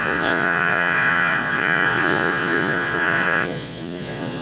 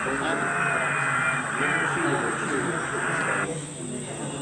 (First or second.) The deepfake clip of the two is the first